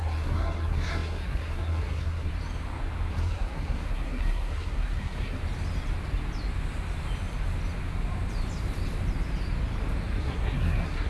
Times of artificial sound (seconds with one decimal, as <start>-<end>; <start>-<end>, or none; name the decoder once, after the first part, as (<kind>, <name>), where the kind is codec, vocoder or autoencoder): 0.0-2.3 (codec, SNAC); 3.1-5.4; 10.2-11.1